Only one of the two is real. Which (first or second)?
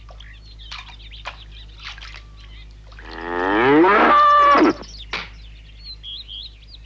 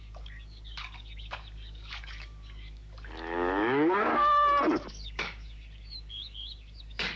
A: first